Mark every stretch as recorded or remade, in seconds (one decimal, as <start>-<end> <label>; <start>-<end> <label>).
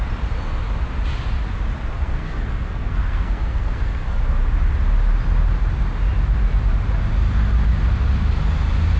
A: 0.0-1.9 recorded; 1.9-4.2 remade; 4.2-9.0 recorded